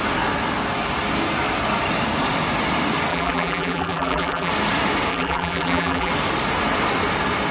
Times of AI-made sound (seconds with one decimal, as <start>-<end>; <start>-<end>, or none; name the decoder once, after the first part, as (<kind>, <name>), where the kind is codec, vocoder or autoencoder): 3.1-4.5 (vocoder, BigVGAN v2); 5.1-6.1